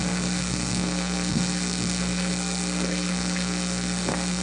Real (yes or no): no